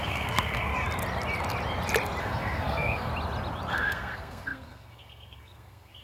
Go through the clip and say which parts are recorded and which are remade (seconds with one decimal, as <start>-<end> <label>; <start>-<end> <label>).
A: 0.0-0.7 remade; 0.7-2.2 recorded; 2.2-3.1 remade; 3.1-3.7 recorded; 3.7-6.0 remade